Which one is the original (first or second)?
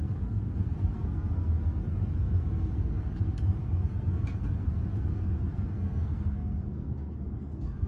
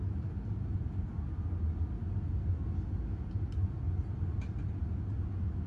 second